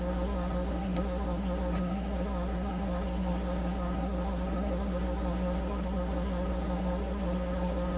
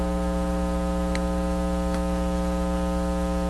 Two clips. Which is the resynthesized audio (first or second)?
first